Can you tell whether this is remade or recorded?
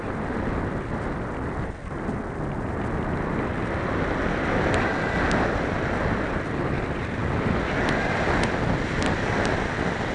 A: recorded